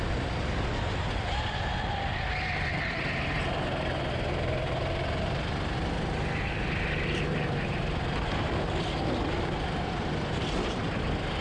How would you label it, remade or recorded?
recorded